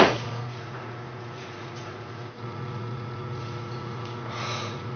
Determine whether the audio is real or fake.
fake